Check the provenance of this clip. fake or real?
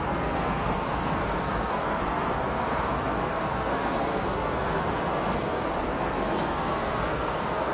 fake